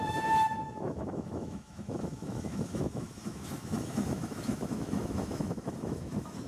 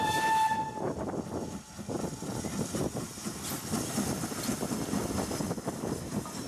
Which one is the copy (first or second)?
first